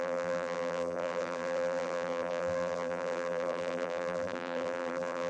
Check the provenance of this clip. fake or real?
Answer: fake